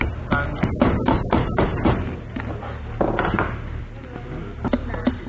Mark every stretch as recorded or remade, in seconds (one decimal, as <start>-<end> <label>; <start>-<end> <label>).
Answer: 0.0-5.3 recorded